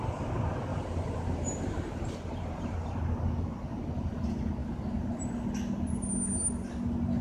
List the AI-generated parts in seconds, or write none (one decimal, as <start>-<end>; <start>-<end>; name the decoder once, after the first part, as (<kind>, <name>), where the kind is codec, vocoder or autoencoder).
0.7-2.9 (vocoder, BigVGAN v2); 4.6-5.2